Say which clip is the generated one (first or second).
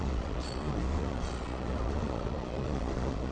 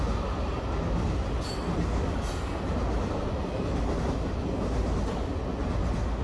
first